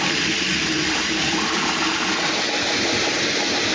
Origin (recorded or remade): recorded